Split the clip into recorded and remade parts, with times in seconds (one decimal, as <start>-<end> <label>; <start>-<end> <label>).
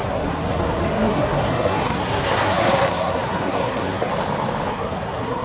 0.0-4.1 remade; 4.1-4.7 recorded; 4.7-5.4 remade